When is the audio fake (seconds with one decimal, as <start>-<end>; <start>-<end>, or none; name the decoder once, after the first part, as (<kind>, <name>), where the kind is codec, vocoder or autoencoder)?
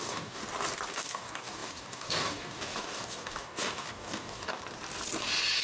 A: 0.0-0.4 (codec, DAC); 0.9-4.6